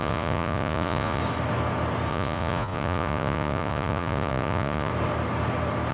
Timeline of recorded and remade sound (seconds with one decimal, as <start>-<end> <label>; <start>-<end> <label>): 0.0-1.2 remade; 1.2-2.1 recorded; 2.1-4.9 remade; 4.9-5.9 recorded